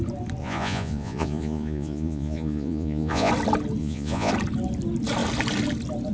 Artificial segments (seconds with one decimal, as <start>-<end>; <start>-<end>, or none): 0.4-3.3; 3.8-4.3